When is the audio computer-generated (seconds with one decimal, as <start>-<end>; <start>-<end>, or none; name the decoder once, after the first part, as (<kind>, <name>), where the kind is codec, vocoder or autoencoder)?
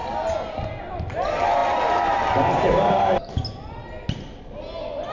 none